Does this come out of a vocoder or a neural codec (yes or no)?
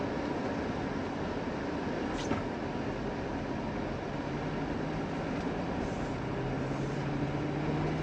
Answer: no